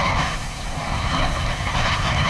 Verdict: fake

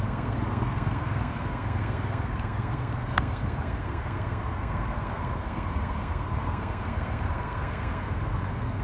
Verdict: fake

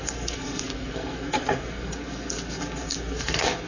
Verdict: fake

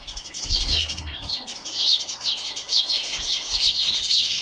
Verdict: fake